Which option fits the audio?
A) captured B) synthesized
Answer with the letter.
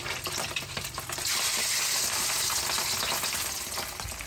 B